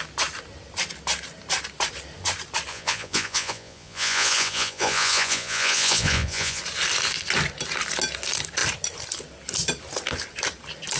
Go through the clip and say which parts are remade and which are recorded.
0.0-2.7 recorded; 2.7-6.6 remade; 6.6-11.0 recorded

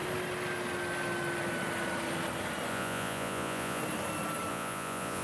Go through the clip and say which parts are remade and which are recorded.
0.0-2.7 recorded; 2.7-3.8 remade; 3.8-4.5 recorded; 4.5-5.2 remade

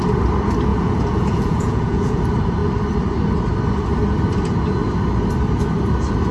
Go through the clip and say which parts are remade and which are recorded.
0.0-0.7 recorded; 0.7-2.2 remade; 2.2-6.3 recorded

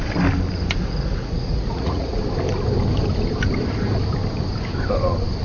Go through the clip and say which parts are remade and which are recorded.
0.0-0.8 recorded; 0.8-2.2 remade; 2.2-5.4 recorded